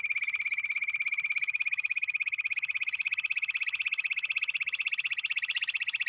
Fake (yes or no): no